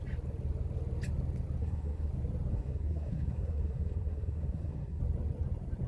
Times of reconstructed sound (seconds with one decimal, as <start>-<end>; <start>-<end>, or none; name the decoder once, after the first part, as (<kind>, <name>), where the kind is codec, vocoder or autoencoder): 1.6-2.1 (codec, SNAC); 2.5-5.0

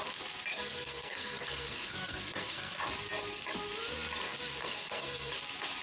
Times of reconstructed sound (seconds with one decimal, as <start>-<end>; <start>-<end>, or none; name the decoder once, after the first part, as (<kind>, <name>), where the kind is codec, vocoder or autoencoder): 0.5-2.8 (codec, SNAC); 4.6-5.3

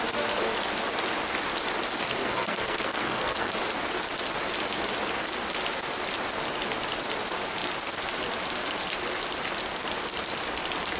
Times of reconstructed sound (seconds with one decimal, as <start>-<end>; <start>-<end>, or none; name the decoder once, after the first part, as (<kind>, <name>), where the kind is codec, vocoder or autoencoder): 2.2-3.5 (codec, SNAC)

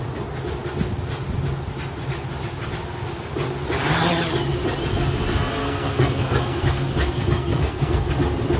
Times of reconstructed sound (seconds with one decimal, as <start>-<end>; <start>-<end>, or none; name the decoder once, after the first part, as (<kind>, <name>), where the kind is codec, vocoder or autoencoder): 5.6-8.1 (codec, SNAC)

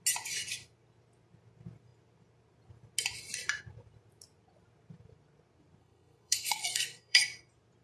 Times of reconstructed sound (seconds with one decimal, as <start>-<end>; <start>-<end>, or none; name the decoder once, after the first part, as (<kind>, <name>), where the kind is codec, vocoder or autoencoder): 5.8-7.2 (codec, SNAC)